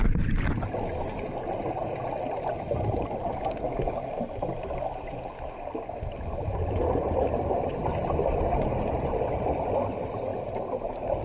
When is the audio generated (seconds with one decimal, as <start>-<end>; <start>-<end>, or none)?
10.3-11.2